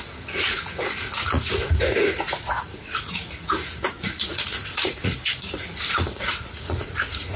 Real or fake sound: fake